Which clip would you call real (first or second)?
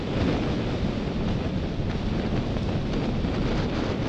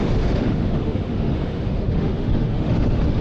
first